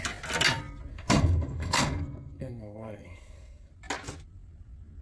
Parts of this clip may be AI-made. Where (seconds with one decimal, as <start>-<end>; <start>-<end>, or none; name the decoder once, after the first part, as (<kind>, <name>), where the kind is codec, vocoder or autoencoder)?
0.9-3.7 (codec, SNAC)